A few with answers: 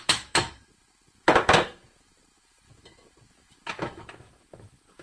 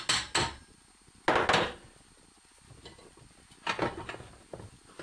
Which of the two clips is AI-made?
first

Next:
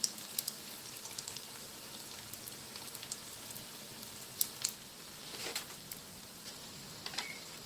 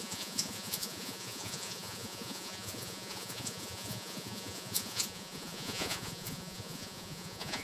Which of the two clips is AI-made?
second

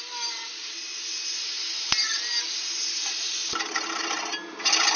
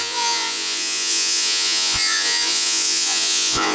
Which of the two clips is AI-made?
second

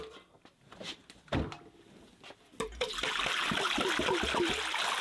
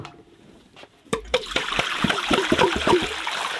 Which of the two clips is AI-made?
second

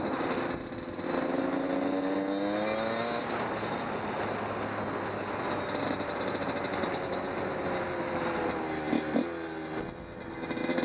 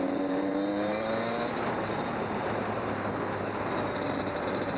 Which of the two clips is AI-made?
second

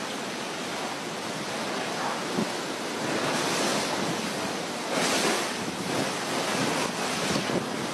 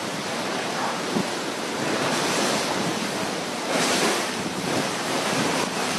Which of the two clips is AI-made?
second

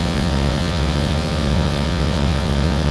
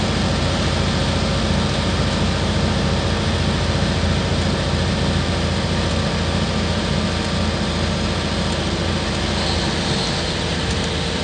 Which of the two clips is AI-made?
first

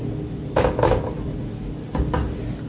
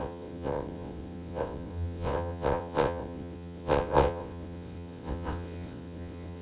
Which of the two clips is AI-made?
second